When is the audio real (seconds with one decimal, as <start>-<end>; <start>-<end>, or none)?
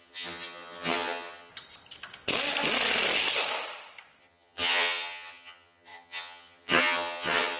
1.5-4.2